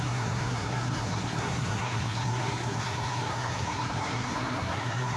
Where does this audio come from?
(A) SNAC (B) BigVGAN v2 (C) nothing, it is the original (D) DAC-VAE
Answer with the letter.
A